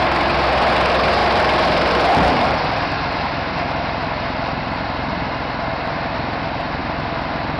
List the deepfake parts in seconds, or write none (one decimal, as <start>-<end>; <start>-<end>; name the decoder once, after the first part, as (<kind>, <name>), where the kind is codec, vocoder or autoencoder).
1.2-5.7 (vocoder, BigVGAN v2)